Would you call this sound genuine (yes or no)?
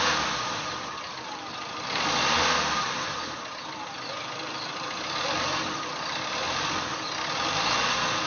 no